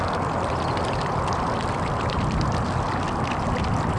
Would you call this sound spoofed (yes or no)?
no